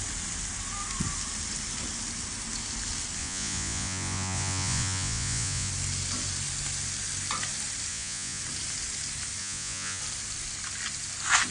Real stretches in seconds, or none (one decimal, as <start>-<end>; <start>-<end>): 0.0-3.2; 5.7-7.9; 8.4-9.4; 10.0-11.5